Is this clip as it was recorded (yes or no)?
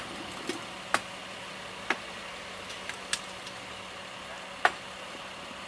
yes